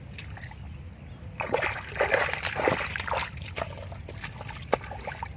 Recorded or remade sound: recorded